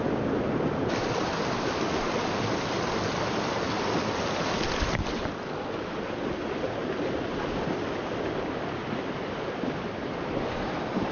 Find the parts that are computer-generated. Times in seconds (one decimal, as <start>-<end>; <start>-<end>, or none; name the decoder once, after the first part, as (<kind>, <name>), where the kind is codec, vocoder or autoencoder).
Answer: none